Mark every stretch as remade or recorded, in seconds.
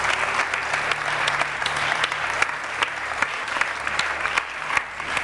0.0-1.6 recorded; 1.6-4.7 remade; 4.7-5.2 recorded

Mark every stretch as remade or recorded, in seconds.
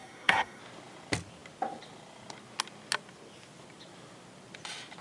0.0-0.6 remade; 0.6-5.0 recorded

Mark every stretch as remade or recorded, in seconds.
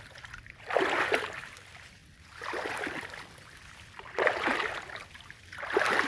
0.0-6.1 recorded